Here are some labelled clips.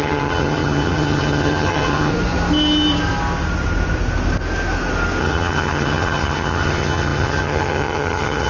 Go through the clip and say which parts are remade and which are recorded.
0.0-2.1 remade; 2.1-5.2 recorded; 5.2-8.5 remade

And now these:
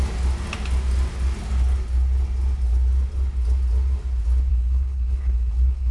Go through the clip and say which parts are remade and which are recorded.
0.0-4.5 recorded; 4.5-5.9 remade